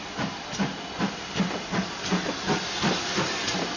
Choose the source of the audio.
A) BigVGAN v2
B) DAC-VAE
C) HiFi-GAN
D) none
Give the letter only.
D